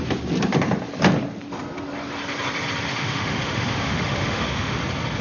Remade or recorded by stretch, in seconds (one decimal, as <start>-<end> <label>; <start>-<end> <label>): 0.0-2.9 recorded; 2.9-4.8 remade; 4.8-5.2 recorded